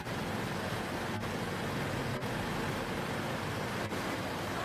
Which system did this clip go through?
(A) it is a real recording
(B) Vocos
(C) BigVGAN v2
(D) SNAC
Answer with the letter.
A